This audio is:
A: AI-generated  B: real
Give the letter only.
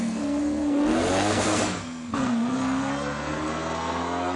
A